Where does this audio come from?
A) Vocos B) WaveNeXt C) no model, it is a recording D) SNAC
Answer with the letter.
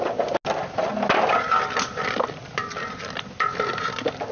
C